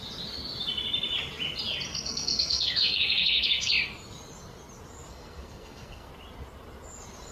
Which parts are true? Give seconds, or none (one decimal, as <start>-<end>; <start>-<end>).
0.0-1.9; 3.7-5.1; 6.1-7.3